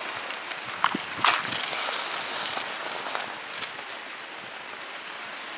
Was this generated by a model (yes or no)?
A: no